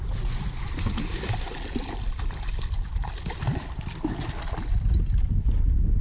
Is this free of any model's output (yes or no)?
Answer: yes